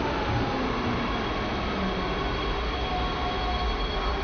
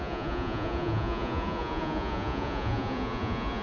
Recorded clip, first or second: first